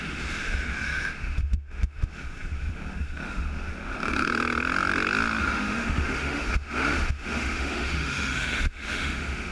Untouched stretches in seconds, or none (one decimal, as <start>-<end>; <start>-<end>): 4.3-5.4